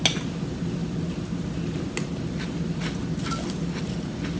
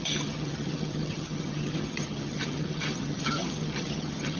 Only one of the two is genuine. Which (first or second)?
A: first